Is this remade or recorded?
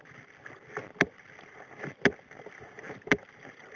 recorded